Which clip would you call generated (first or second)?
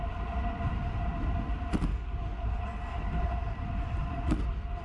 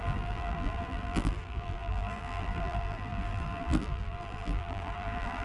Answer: second